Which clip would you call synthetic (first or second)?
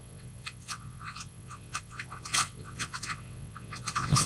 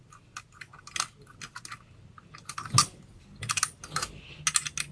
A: first